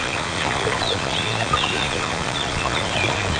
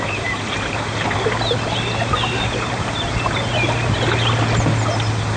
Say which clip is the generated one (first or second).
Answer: first